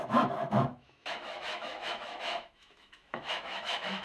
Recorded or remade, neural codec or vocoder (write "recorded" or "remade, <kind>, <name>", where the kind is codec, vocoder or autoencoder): remade, autoencoder, DAC-VAE